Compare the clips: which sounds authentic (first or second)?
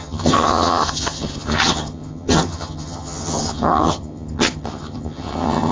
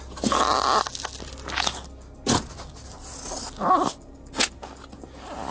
second